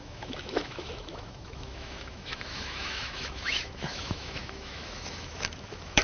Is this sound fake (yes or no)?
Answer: yes